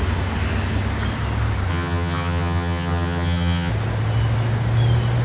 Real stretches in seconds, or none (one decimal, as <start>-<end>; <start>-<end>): 0.0-1.7; 3.7-5.2